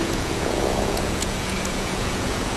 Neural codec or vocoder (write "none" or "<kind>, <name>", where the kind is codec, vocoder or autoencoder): vocoder, Vocos